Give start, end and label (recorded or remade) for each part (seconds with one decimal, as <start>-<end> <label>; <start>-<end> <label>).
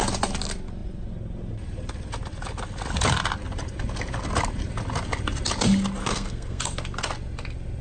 0.0-6.0 recorded; 6.0-6.6 remade; 6.6-7.8 recorded